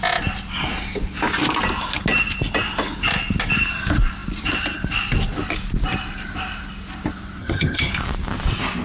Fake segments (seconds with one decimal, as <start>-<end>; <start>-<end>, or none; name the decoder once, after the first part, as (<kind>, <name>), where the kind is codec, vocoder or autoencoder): 7.4-7.9 (vocoder, HiFi-GAN)

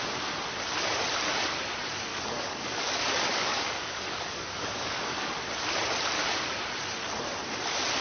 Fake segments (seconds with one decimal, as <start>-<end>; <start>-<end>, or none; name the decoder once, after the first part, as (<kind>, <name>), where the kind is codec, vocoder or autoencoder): 2.1-5.3 (codec, DAC)

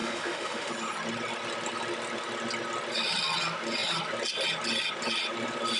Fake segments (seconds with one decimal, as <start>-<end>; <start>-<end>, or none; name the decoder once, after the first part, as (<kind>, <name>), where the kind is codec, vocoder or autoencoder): 0.0-0.7 (autoencoder, DAC-VAE)

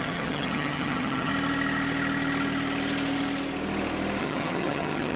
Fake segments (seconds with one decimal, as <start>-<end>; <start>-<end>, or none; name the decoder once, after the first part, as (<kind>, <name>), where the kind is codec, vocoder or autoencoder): 0.0-1.3 (vocoder, HiFi-GAN); 4.2-5.2

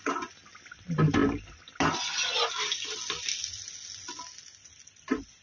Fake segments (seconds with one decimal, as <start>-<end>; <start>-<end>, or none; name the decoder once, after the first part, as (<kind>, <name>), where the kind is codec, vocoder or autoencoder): none